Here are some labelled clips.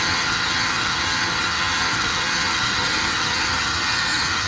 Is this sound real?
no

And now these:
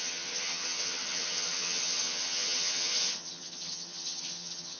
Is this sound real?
no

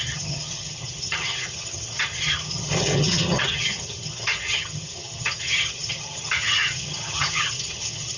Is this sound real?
no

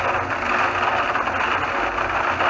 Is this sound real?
yes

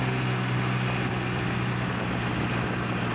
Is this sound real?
yes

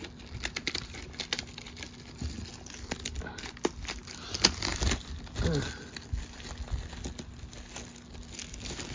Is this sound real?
yes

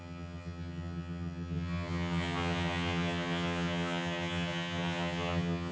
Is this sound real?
no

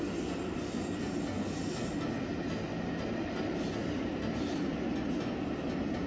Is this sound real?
yes